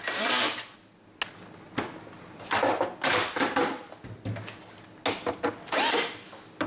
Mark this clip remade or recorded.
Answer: recorded